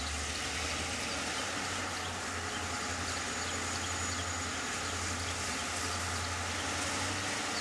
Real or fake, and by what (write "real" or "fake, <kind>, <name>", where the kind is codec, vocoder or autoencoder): real